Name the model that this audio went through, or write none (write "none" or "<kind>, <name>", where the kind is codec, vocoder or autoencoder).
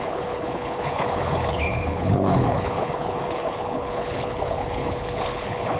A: codec, HILCodec